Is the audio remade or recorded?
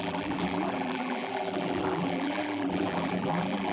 remade